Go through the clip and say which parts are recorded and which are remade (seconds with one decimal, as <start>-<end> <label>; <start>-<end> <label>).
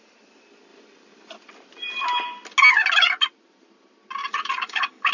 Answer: 0.0-4.2 recorded; 4.2-5.1 remade